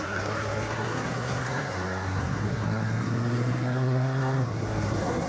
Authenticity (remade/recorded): remade